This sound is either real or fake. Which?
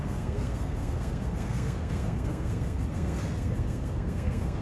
fake